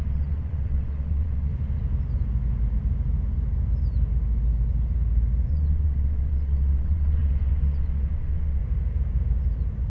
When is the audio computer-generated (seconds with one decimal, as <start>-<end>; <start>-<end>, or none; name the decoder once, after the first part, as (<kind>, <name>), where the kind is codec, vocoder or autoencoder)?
0.0-1.5 (vocoder, WaveNeXt); 5.5-8.6